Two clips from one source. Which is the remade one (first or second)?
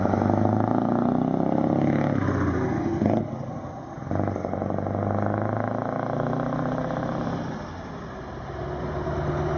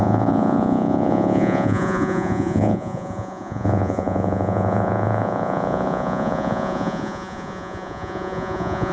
second